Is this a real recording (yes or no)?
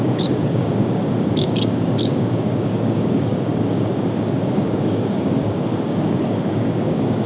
no